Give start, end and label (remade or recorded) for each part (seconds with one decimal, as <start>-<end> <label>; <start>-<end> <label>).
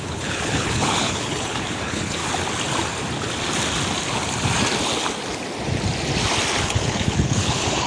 0.0-2.2 remade; 2.2-6.6 recorded; 6.6-7.9 remade